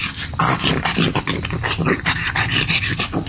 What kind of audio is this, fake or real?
real